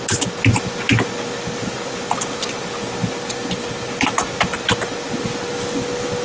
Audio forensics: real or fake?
real